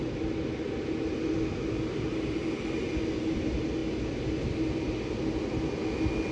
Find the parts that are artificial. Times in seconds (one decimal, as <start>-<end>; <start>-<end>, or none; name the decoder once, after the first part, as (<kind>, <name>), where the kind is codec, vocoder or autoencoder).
none